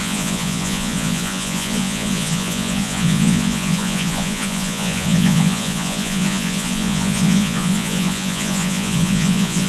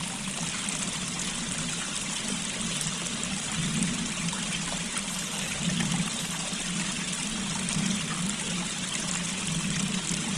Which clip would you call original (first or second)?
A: second